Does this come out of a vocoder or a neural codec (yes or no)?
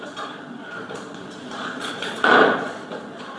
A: yes